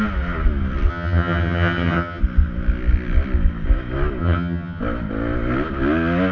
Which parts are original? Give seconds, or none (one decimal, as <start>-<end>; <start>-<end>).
0.0-0.9; 2.2-4.2; 4.8-6.3